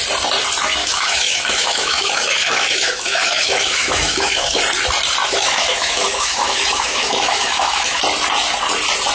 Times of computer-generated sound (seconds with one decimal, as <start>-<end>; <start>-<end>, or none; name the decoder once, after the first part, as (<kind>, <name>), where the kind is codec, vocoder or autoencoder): 0.8-4.6 (autoencoder, DAC-VAE); 5.2-8.0